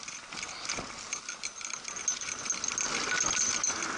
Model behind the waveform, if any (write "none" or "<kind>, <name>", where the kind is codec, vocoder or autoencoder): none